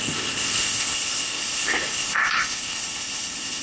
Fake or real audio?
fake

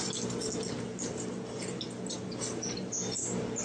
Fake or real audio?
real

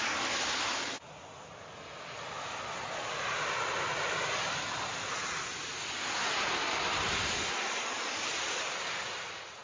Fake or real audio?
real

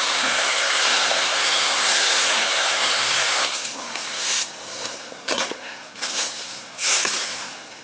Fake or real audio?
fake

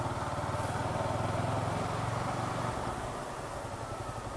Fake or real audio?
real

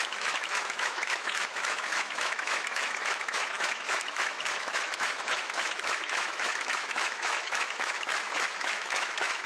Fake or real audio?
fake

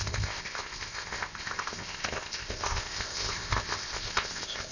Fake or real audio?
fake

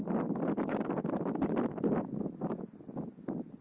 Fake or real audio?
real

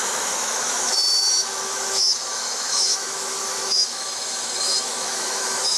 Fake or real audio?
fake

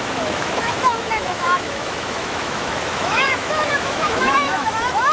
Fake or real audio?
fake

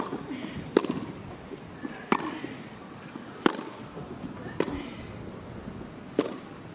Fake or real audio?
real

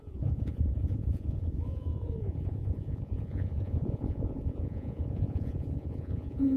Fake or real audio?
fake